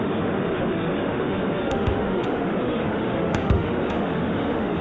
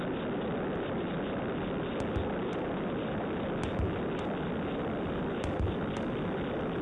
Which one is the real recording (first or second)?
second